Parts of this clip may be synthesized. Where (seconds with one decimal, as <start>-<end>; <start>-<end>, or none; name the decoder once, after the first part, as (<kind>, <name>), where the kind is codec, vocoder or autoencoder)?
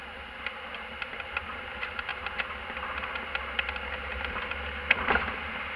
none